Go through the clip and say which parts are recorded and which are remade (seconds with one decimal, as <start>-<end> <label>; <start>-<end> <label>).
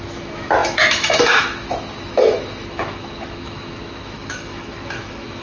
0.0-5.4 remade